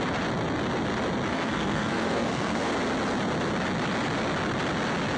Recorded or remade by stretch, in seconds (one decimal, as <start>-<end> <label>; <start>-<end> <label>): 0.0-1.3 recorded; 1.3-2.7 remade; 2.7-5.2 recorded

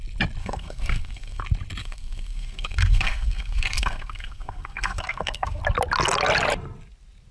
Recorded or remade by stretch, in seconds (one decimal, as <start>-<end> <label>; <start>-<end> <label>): 0.0-0.4 recorded; 0.4-1.4 remade; 1.4-1.8 recorded; 1.8-5.6 remade; 5.6-7.3 recorded